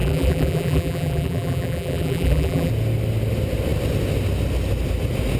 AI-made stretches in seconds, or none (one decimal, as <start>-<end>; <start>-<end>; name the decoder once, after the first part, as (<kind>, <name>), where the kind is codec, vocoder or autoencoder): 0.0-2.7 (vocoder, BigVGAN v2)